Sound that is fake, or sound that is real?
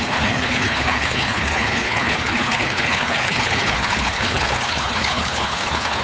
fake